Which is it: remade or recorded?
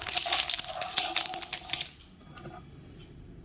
recorded